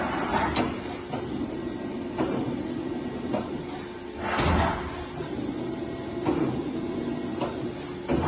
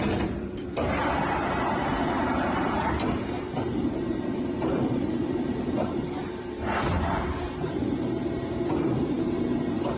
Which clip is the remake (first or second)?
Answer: second